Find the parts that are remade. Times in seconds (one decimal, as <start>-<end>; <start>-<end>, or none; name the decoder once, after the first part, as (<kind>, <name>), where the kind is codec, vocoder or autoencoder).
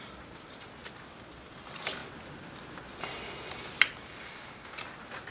none